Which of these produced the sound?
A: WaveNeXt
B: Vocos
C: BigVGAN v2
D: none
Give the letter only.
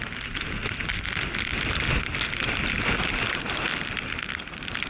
D